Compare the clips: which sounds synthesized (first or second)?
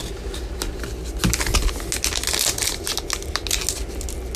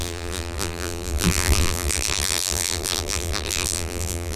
second